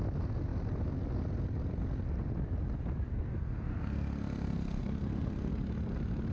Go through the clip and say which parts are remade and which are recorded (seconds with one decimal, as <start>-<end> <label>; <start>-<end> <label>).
0.0-3.1 recorded; 3.1-5.5 remade; 5.5-6.3 recorded